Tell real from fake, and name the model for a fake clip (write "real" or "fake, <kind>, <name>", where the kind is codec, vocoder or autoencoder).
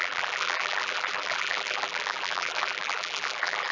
fake, vocoder, BigVGAN v2